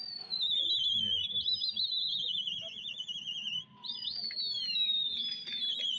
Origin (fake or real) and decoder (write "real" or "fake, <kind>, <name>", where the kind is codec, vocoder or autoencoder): real